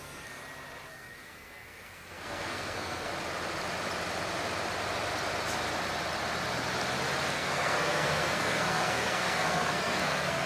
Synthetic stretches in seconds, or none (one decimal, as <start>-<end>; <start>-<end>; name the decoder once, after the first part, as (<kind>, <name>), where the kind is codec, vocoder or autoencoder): 0.0-0.4 (codec, SNAC); 0.9-3.1; 7.3-10.5